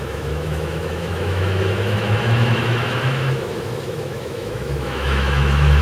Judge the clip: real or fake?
fake